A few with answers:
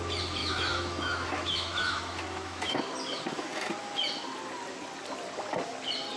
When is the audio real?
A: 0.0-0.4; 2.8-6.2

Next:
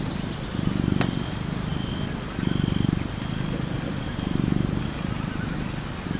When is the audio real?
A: 0.0-6.2

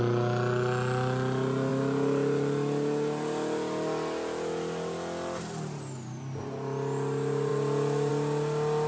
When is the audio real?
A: 0.0-8.9

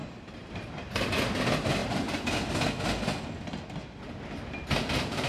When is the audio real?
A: 1.1-5.3

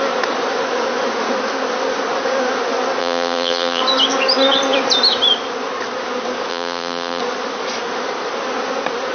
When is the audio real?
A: 0.0-3.0; 3.8-6.5; 7.2-9.1

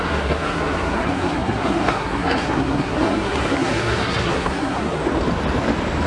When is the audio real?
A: 5.0-6.1

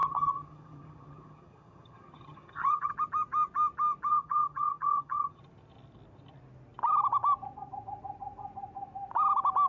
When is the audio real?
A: 2.9-4.1; 5.4-9.7